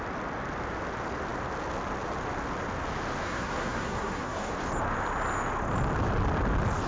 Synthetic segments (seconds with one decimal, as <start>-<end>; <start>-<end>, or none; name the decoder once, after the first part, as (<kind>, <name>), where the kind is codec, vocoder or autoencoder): 3.2-4.5 (codec, SNAC)